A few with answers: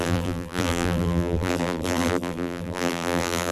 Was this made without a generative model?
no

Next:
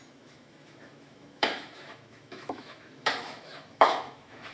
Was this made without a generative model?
no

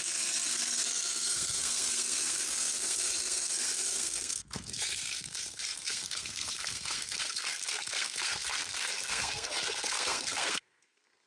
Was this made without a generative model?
no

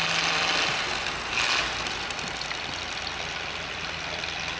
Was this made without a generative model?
yes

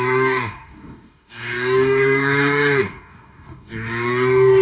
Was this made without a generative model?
no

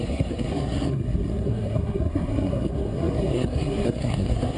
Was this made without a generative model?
no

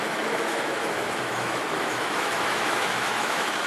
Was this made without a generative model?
no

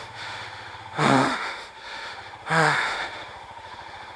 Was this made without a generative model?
no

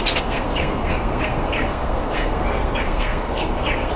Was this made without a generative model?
no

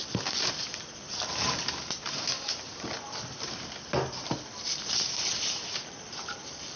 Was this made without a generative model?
yes